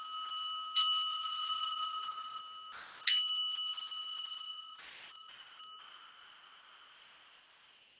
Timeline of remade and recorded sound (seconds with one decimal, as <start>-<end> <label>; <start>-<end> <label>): 0.0-1.1 recorded; 1.1-2.4 remade; 2.4-4.1 recorded; 4.1-5.6 remade; 5.6-8.0 recorded